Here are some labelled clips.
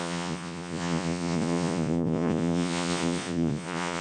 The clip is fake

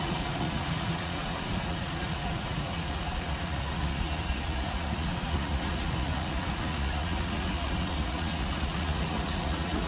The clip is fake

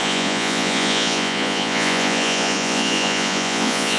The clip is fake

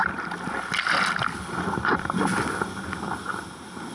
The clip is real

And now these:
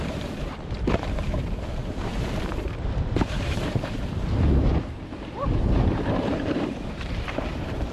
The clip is fake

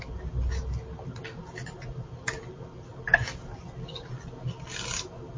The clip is real